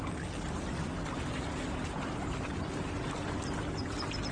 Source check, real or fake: real